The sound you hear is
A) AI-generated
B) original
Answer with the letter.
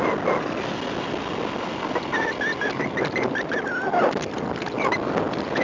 B